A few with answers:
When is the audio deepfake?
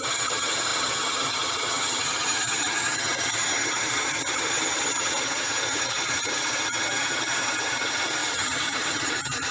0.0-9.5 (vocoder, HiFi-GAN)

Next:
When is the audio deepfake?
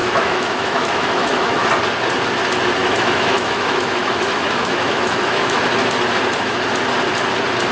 0.0-1.7 (autoencoder, DAC-VAE); 2.8-5.6